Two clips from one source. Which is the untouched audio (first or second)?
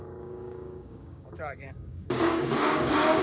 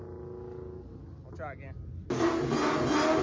second